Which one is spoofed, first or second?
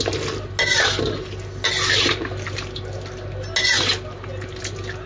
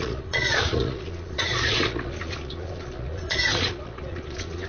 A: second